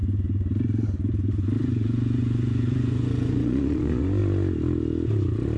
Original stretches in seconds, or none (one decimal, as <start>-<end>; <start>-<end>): 0.0-1.6; 4.2-5.6

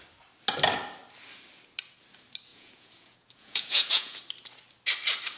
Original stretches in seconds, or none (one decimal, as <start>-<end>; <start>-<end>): 0.0-2.5; 4.2-5.4

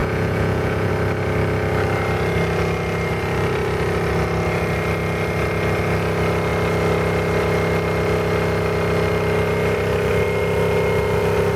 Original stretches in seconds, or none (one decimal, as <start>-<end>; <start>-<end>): 0.9-11.6

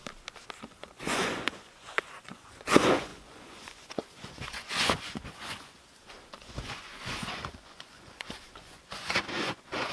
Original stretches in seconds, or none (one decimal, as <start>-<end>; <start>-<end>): 0.0-0.5

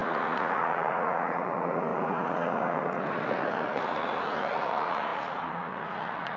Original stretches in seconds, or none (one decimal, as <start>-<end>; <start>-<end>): none